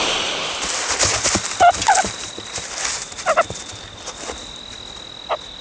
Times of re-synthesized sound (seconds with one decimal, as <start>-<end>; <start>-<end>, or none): none